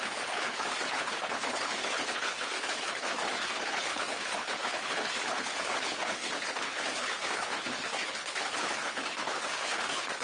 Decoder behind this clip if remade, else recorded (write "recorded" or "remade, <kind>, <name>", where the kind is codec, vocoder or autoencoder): remade, codec, HILCodec